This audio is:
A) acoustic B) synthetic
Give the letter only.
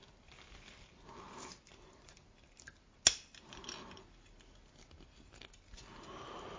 A